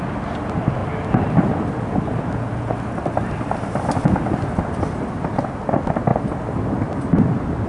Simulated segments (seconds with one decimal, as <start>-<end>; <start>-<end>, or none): 0.8-2.5